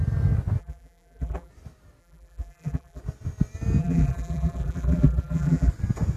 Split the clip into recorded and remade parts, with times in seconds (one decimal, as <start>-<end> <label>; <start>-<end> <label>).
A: 0.0-0.6 recorded; 0.6-1.5 remade; 1.5-2.0 recorded; 2.0-3.0 remade; 3.0-3.8 recorded; 3.8-5.7 remade; 5.7-6.2 recorded